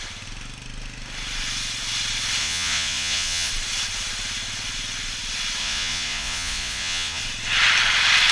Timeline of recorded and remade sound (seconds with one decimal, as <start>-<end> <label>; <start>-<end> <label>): 0.0-2.4 recorded; 2.4-3.5 remade; 3.5-5.6 recorded; 5.6-7.2 remade; 7.2-8.3 recorded